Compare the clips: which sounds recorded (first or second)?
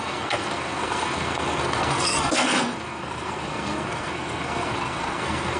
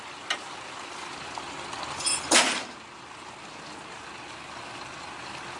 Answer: second